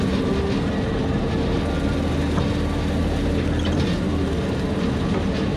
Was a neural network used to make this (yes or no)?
no